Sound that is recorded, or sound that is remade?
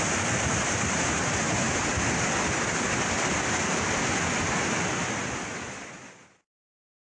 recorded